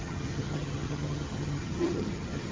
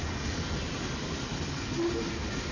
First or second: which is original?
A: second